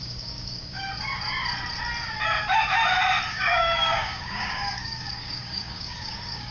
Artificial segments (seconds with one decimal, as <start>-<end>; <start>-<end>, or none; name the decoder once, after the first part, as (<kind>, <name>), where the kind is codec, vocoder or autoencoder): 0.0-0.9 (codec, DAC); 3.3-6.5